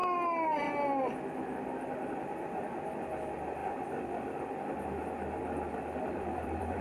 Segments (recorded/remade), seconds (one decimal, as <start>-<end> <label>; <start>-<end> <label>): 0.0-2.1 recorded; 2.1-3.6 remade; 3.6-6.0 recorded; 6.0-6.8 remade